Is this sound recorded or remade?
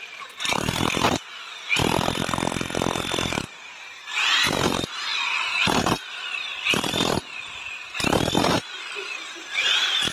recorded